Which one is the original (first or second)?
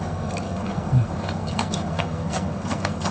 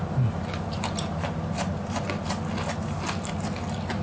second